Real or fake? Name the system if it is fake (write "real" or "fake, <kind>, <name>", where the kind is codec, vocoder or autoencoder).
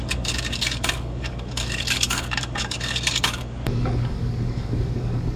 fake, codec, DAC